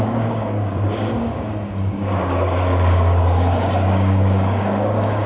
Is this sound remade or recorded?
remade